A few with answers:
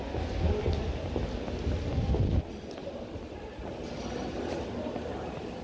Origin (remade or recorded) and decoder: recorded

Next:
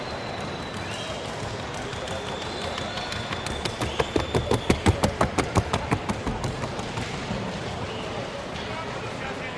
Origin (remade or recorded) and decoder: recorded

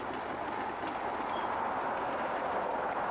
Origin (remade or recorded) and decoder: recorded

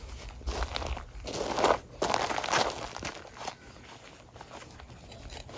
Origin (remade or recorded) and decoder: recorded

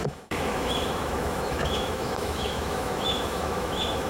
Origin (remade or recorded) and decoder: remade, autoencoder, DAC-VAE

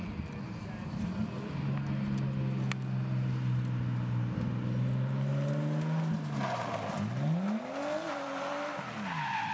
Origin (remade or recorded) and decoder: recorded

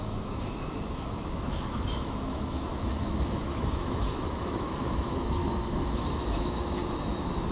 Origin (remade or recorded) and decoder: remade, autoencoder, DAC-VAE